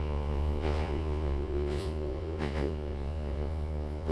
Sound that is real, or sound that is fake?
fake